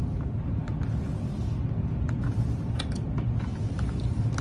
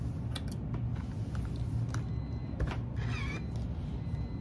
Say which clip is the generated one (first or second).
first